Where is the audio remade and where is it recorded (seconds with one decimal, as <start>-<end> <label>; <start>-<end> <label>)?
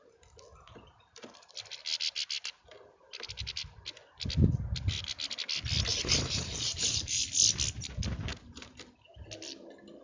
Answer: 0.0-5.9 recorded; 5.9-7.2 remade; 7.2-8.3 recorded; 8.3-8.8 remade; 8.8-10.0 recorded